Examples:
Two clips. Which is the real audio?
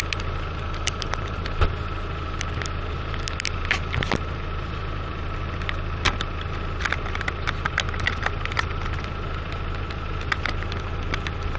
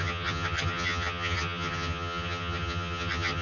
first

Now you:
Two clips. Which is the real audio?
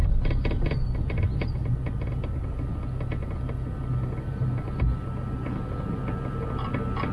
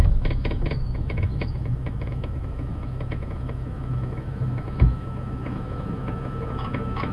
first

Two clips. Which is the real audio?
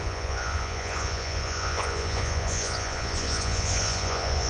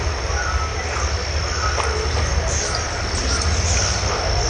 second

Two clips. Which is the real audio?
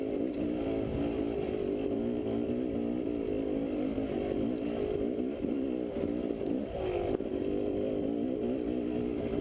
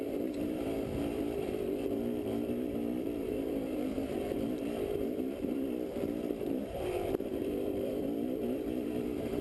first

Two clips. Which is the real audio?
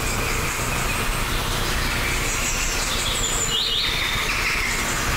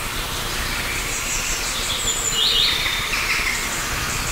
first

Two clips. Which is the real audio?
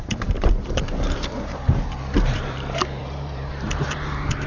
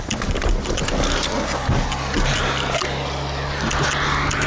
second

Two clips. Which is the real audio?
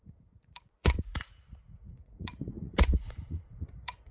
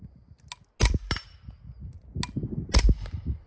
second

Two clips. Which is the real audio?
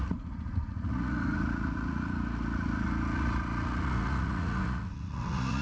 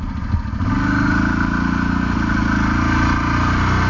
second